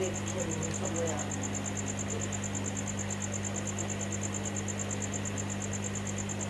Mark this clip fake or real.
real